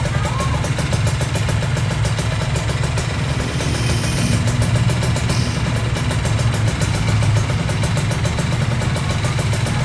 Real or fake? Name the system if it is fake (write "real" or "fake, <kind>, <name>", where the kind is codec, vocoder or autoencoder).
real